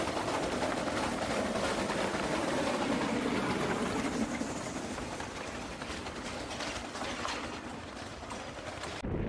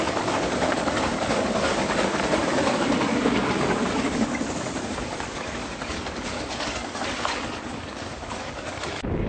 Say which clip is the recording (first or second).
first